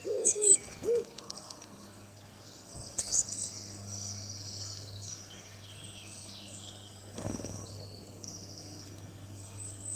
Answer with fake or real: fake